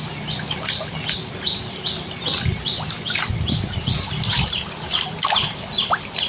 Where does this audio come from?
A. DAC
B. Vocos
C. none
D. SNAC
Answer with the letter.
C